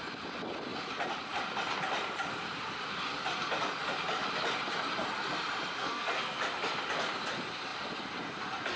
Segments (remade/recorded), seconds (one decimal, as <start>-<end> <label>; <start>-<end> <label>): 0.0-5.8 recorded; 5.8-6.4 remade; 6.4-8.8 recorded